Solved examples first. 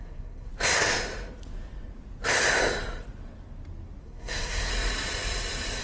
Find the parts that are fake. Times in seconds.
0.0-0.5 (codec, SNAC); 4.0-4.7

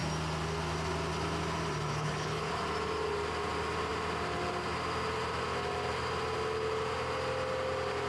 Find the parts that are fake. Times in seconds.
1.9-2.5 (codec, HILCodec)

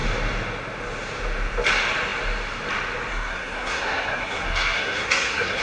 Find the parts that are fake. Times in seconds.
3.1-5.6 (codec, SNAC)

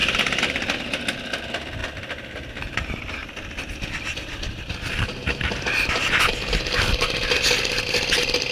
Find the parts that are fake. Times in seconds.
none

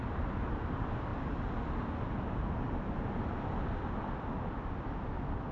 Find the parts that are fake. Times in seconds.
none